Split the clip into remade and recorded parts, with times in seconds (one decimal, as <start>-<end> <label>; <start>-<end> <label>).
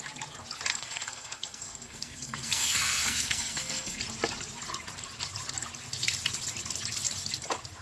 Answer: 0.0-0.7 recorded; 0.7-4.0 remade; 4.0-7.8 recorded